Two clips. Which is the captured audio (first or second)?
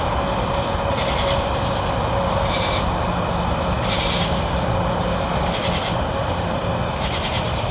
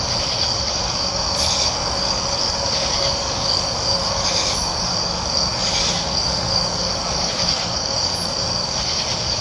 first